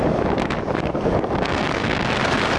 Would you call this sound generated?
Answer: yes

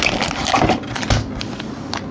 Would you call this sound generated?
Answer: no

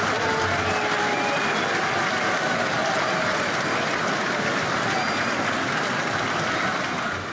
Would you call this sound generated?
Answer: no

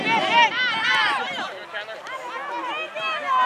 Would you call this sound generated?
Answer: no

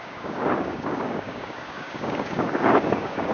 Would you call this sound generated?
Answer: yes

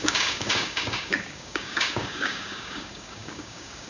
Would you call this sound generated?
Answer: yes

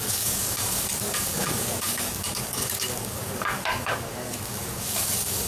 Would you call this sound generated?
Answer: yes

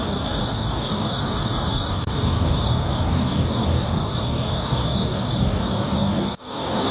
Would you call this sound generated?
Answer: yes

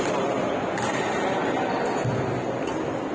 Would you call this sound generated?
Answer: no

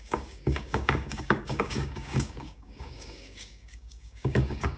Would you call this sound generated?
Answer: yes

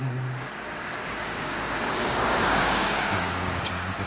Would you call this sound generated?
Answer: yes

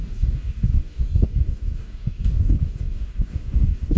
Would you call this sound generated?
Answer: yes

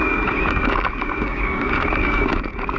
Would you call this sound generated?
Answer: yes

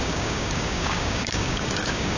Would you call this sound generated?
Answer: yes